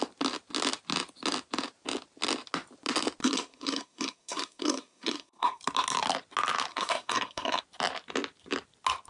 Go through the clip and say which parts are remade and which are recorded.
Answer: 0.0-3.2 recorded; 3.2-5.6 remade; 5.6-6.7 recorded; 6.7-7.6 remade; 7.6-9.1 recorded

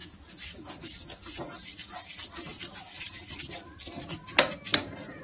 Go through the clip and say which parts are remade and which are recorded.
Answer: 0.0-5.2 recorded

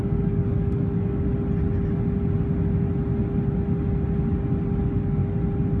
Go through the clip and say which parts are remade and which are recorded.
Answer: 0.0-1.3 remade; 1.3-4.8 recorded; 4.8-5.2 remade; 5.2-5.8 recorded

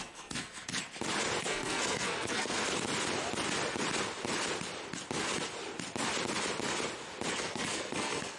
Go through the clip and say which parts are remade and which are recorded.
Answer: 0.0-0.7 remade; 0.7-1.4 recorded; 1.4-2.6 remade; 2.6-7.3 recorded; 7.3-8.4 remade

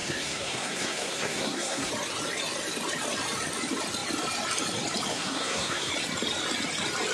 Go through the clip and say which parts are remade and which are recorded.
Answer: 0.0-1.9 remade; 1.9-5.1 recorded; 5.1-5.9 remade; 5.9-7.1 recorded

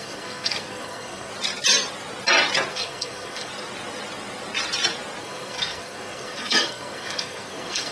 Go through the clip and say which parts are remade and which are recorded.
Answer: 0.0-1.3 remade; 1.3-2.7 recorded; 2.7-3.5 remade; 3.5-5.2 recorded; 5.2-7.9 remade